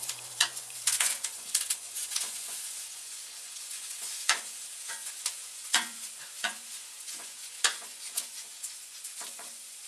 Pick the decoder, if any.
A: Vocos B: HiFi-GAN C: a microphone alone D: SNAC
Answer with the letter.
A